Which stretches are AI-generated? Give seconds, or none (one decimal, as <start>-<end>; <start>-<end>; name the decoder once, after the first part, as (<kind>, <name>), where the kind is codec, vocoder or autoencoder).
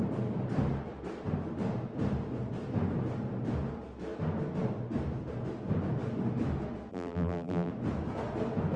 6.9-7.7 (vocoder, BigVGAN v2)